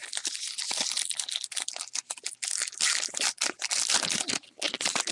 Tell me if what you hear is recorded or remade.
recorded